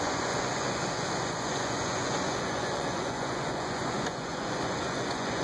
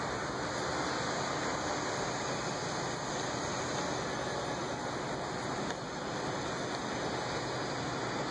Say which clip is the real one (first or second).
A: second